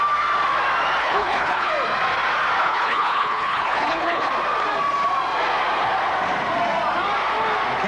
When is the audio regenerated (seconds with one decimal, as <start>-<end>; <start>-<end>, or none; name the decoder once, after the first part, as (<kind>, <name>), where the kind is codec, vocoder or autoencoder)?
1.0-1.7 (codec, HILCodec); 2.6-4.3